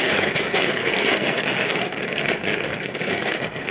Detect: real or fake fake